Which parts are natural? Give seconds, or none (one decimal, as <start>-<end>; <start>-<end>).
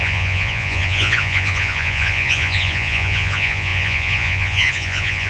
none